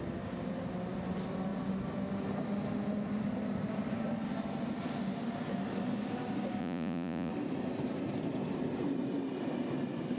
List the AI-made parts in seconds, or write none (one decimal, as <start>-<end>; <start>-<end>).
6.6-7.3